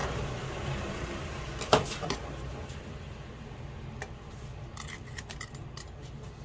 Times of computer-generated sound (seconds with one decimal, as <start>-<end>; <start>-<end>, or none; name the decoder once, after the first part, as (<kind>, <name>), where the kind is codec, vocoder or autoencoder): none